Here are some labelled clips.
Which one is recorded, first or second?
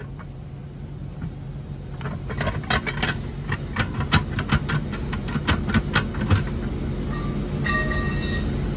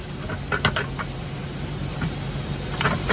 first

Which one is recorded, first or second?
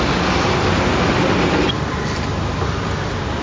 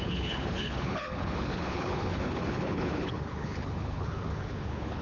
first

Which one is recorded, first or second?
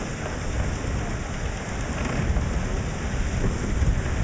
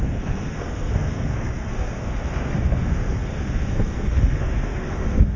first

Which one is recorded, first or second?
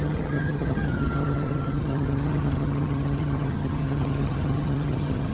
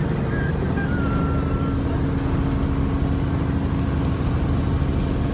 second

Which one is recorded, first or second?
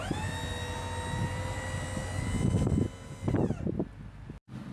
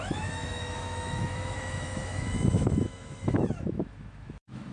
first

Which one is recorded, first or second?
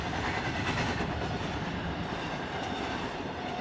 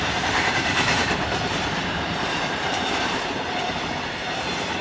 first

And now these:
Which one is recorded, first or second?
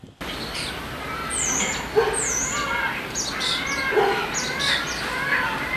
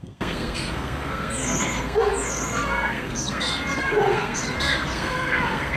first